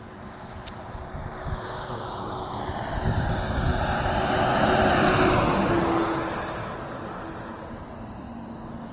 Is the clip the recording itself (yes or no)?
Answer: yes